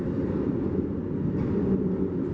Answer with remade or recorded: recorded